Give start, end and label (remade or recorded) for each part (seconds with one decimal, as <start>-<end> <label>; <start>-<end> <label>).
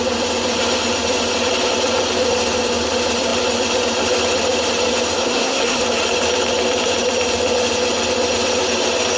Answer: 0.0-5.2 recorded; 5.2-5.8 remade; 5.8-9.2 recorded